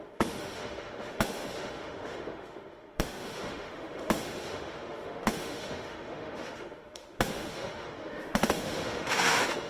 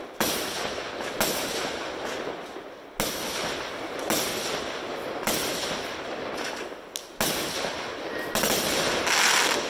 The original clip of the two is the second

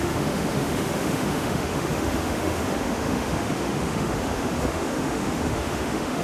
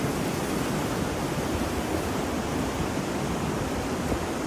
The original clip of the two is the second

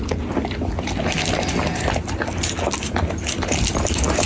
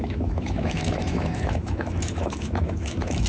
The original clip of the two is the first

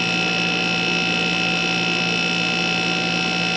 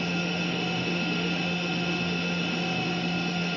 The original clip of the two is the first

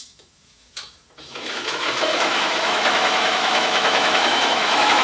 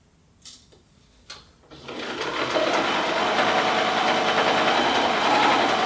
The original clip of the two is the second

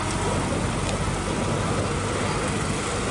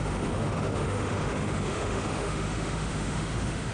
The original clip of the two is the first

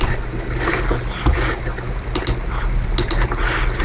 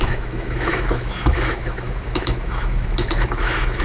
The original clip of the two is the first